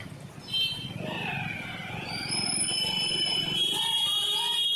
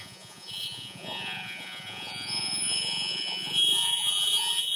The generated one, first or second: second